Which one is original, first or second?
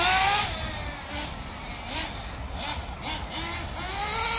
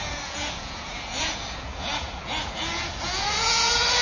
first